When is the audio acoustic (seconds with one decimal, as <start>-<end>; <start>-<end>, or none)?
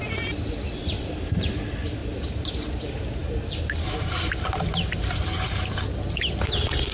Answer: 0.0-3.2; 5.0-6.9